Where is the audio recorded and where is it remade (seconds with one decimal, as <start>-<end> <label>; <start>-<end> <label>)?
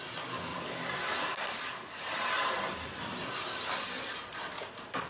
0.0-0.5 recorded; 0.5-3.6 remade; 3.6-5.1 recorded